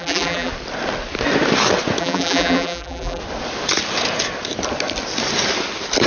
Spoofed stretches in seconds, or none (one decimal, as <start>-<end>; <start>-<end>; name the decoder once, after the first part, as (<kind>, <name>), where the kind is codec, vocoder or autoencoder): 0.0-0.5 (vocoder, BigVGAN v2); 2.0-3.2